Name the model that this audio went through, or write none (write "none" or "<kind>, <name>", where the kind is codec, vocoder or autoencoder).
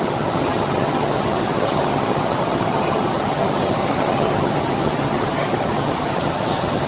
vocoder, HiFi-GAN